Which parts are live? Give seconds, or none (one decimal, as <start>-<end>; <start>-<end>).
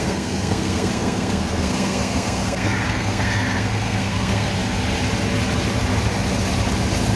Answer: 4.5-7.2